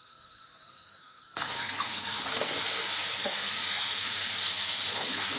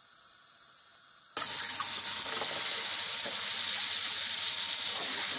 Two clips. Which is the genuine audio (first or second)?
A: second